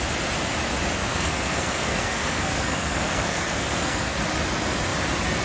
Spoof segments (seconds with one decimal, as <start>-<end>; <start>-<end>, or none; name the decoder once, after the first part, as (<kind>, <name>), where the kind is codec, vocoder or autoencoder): 1.0-4.2 (codec, SNAC)